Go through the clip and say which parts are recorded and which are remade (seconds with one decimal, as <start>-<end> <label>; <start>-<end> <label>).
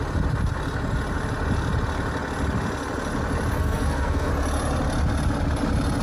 0.0-3.6 recorded; 3.6-4.3 remade; 4.3-6.0 recorded